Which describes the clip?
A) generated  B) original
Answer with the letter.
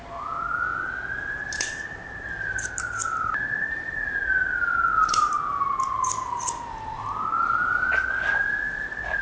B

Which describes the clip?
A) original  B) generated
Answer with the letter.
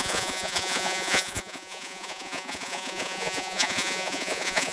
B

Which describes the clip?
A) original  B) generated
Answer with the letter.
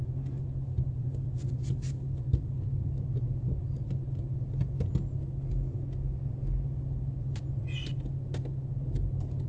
A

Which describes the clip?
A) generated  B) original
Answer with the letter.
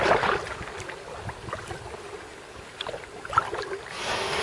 B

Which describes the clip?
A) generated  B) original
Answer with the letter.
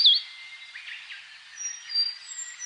B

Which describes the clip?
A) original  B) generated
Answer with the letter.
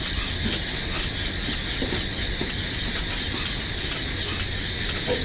A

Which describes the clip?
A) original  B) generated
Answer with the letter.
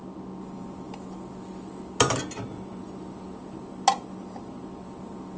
A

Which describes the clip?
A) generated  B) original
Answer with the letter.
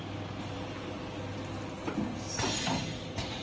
B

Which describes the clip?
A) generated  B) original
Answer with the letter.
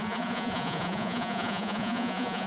A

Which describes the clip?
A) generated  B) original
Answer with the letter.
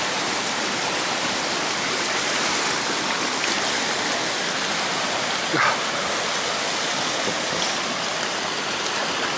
B